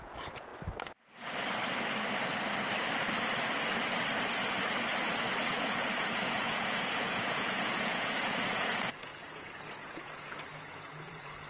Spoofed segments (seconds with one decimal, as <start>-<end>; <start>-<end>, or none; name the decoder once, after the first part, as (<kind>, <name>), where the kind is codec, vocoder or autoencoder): 0.0-0.5 (vocoder, Vocos); 5.5-11.5